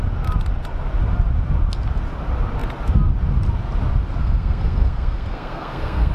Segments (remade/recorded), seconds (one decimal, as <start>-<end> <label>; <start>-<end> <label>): 0.0-4.2 recorded; 4.2-6.1 remade